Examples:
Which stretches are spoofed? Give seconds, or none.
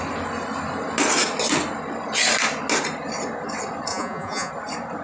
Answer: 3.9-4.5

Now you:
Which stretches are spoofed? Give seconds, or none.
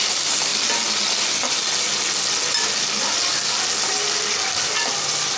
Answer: none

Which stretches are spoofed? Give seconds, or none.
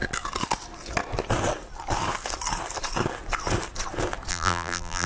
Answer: 4.3-5.1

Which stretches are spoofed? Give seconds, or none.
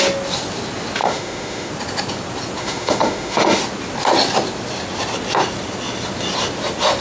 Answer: 1.0-1.7; 2.6-3.6